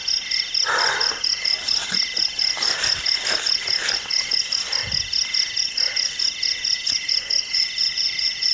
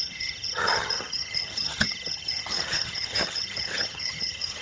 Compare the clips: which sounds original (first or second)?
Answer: first